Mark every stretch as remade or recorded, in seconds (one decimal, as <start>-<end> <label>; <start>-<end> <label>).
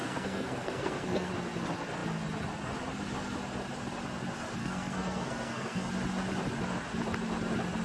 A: 0.0-1.3 remade; 1.3-4.6 recorded; 4.6-5.9 remade; 5.9-7.8 recorded